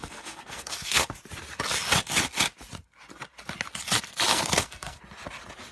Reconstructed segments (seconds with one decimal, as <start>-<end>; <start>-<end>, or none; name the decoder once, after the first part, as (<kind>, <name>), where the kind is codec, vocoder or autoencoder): 0.0-1.1 (codec, SNAC); 4.3-5.0

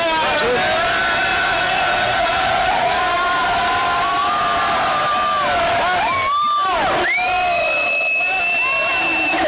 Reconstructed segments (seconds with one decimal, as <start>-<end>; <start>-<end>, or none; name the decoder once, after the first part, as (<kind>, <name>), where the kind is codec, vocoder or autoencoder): 1.3-3.0 (vocoder, Vocos)

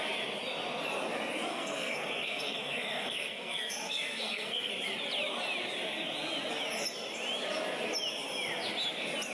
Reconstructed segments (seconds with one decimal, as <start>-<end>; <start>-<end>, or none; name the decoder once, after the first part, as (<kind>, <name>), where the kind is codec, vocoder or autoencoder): 1.5-4.7 (codec, SNAC)